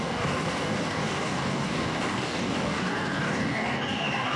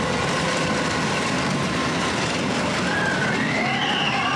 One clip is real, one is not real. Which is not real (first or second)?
first